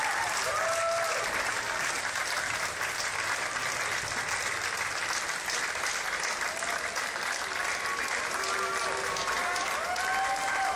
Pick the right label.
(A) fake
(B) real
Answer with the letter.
B